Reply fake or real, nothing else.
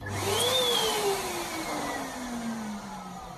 real